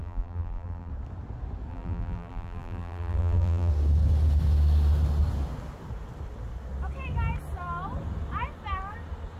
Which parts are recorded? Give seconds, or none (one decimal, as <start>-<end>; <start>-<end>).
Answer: 0.9-1.7; 3.7-9.4

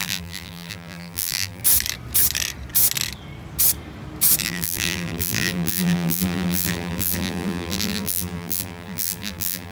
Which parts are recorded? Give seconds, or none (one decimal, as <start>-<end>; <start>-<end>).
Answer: 1.6-4.4

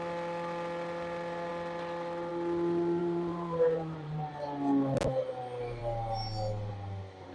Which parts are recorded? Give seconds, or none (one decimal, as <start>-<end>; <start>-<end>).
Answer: 0.0-3.0; 4.3-7.3

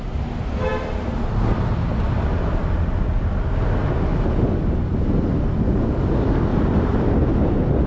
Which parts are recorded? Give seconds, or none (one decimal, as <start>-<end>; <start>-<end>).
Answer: 0.0-6.5; 7.1-7.9

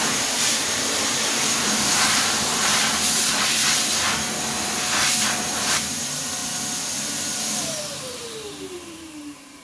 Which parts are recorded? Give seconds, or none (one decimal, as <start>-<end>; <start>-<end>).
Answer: 2.7-5.6; 6.4-7.6